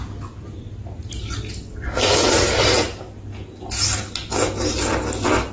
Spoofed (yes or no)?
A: no